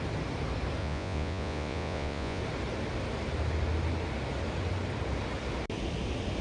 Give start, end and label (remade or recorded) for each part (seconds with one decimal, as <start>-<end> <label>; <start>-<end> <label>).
0.0-0.8 recorded; 0.8-2.4 remade; 2.4-6.4 recorded